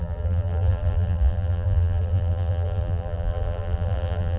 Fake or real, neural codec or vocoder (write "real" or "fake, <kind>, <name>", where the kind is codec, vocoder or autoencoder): fake, vocoder, BigVGAN v2